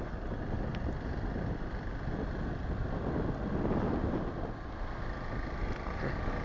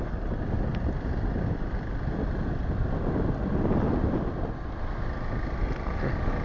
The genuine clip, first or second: first